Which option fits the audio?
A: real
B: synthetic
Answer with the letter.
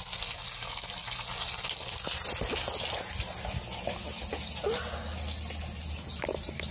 A